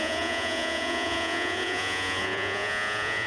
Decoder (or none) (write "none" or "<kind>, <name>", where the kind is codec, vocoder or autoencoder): vocoder, Vocos